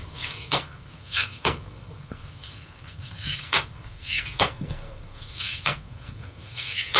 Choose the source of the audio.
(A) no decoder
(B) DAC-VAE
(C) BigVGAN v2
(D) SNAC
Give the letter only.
D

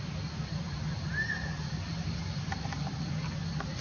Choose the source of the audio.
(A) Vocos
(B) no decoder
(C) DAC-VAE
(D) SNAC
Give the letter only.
B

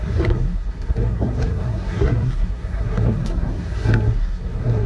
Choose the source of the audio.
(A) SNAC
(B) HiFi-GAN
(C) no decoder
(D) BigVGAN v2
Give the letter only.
A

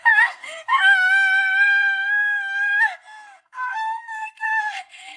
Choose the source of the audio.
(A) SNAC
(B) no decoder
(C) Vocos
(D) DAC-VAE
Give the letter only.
A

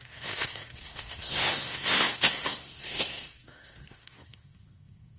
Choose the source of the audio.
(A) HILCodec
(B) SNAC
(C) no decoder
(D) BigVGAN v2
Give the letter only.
B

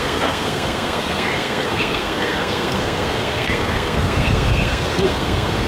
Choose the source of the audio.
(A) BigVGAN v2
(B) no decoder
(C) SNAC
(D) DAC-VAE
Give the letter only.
C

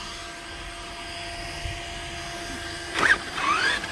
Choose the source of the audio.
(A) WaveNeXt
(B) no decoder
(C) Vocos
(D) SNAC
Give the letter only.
B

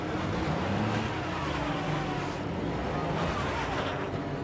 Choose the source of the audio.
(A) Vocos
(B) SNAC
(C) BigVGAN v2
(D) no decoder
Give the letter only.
D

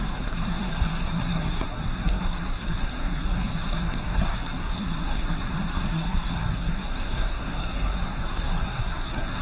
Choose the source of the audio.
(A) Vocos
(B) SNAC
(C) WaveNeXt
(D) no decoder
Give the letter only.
B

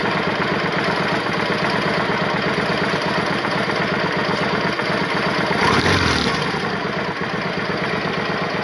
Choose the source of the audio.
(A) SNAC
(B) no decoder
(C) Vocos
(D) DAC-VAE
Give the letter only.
B